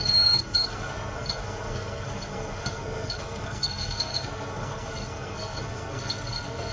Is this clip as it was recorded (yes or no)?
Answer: no